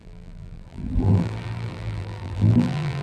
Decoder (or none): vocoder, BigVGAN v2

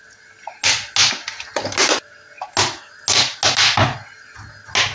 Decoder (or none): none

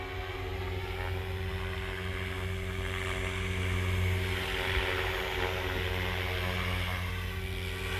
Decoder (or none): none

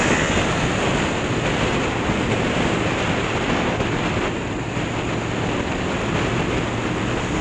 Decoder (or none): none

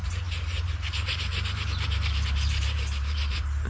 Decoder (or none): vocoder, BigVGAN v2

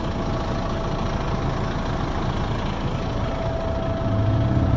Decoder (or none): none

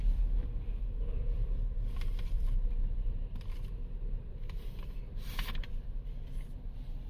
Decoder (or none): vocoder, BigVGAN v2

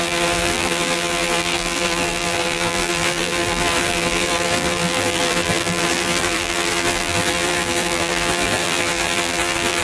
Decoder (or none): vocoder, BigVGAN v2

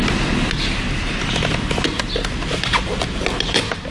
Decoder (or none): none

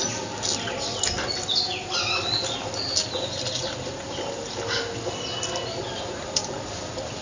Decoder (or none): none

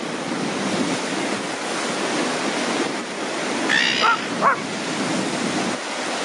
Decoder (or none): vocoder, BigVGAN v2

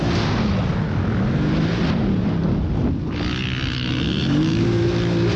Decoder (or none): none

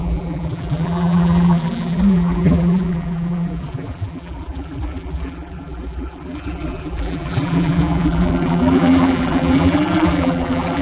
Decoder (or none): vocoder, BigVGAN v2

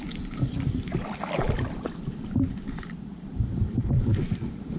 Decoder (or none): vocoder, BigVGAN v2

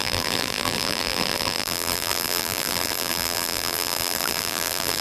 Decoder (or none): vocoder, BigVGAN v2